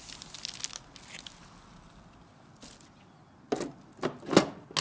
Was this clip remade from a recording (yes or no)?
no